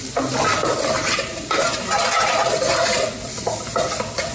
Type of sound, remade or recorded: recorded